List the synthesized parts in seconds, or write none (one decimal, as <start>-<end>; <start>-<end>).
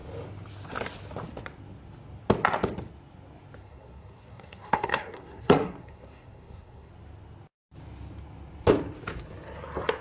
3.6-6.9